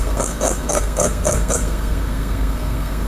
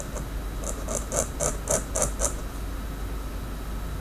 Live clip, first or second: second